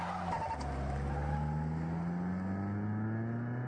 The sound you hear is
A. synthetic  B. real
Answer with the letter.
B